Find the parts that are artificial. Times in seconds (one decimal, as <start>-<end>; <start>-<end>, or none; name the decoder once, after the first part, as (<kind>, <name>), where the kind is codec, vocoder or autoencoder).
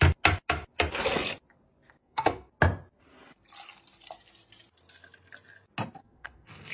2.0-2.5 (codec, SNAC); 6.0-6.7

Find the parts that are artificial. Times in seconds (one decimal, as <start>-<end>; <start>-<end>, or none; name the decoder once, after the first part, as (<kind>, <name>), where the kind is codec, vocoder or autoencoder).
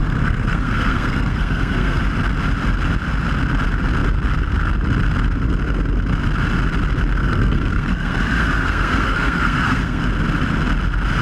0.0-2.0 (codec, SNAC); 7.2-10.0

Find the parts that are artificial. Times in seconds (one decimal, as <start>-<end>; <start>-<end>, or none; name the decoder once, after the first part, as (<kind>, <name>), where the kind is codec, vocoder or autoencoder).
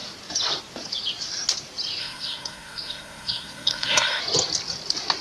2.0-4.2 (codec, SNAC)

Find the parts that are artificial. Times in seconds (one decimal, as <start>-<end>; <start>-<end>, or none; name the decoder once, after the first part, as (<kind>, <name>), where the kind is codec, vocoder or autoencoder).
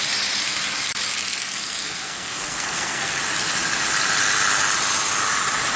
1.2-3.2 (codec, SNAC)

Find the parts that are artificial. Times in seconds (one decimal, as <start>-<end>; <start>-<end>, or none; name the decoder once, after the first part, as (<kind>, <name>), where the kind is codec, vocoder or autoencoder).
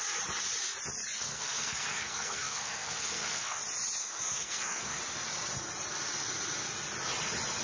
1.3-3.6 (codec, SNAC); 4.0-5.0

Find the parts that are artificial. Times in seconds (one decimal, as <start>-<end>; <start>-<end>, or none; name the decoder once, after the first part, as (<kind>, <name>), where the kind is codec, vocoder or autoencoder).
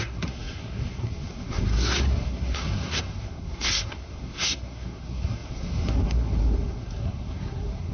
0.0-7.9 (codec, SNAC)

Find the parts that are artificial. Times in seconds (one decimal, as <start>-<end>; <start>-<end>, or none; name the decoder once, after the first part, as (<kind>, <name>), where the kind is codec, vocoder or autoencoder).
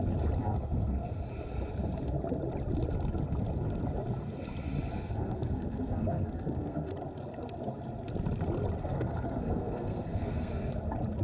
0.4-1.2 (codec, SNAC); 4.9-6.9; 8.8-10.7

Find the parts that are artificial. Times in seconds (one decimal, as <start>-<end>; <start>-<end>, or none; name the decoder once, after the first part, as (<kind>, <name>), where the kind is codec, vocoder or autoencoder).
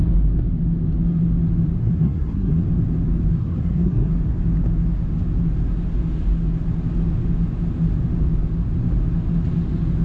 1.8-2.6 (codec, SNAC); 3.4-4.1